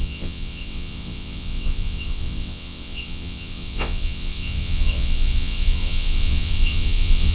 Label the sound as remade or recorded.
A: remade